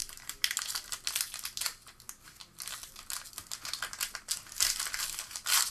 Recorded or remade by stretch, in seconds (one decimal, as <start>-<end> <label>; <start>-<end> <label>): 0.0-5.7 recorded